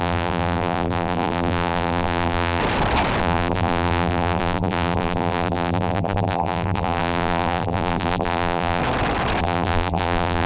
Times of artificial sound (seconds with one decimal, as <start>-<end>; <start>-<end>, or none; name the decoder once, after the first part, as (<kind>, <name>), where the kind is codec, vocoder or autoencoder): 0.0-2.6 (vocoder, BigVGAN v2); 3.2-8.8; 9.4-10.5